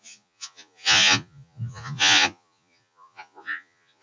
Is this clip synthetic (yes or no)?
yes